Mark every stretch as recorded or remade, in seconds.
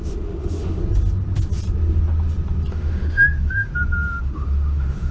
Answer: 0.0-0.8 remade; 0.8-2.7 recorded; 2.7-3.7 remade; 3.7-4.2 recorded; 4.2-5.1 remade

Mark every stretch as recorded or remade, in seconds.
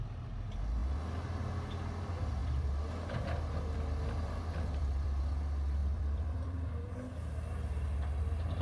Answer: 0.0-2.4 recorded; 2.4-5.2 remade; 5.2-5.8 recorded; 5.8-6.9 remade; 6.9-8.6 recorded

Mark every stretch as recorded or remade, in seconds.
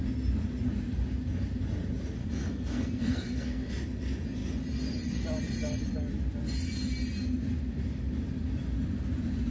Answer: 0.0-2.2 recorded; 2.2-3.7 remade; 3.7-9.5 recorded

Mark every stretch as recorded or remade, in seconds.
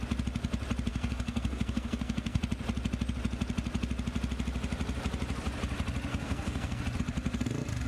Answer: 0.0-0.9 recorded; 0.9-2.4 remade; 2.4-6.1 recorded; 6.1-6.8 remade; 6.8-7.9 recorded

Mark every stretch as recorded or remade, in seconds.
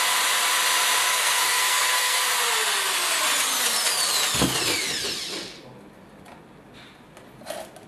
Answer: 0.0-1.1 recorded; 1.1-2.2 remade; 2.2-7.9 recorded